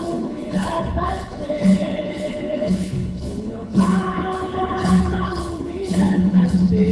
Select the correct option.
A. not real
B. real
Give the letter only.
A